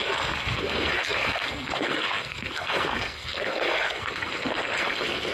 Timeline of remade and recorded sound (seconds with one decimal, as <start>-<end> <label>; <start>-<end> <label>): 0.0-5.3 remade